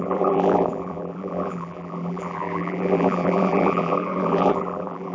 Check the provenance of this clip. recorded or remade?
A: remade